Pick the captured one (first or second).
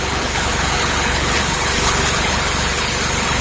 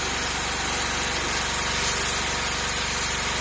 second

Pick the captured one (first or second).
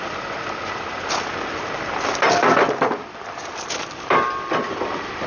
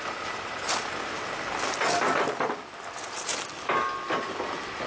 second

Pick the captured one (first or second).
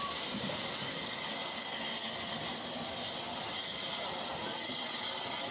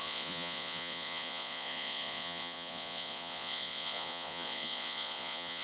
first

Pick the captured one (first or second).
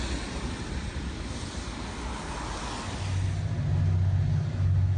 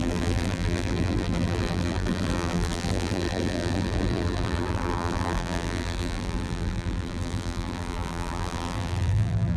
first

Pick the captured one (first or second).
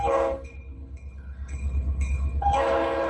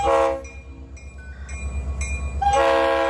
second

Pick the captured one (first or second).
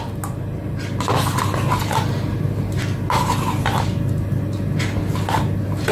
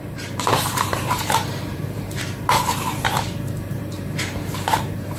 first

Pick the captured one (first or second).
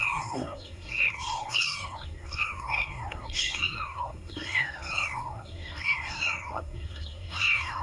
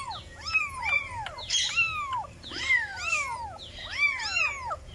second